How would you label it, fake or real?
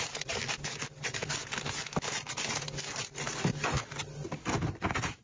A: real